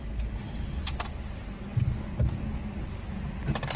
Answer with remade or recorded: recorded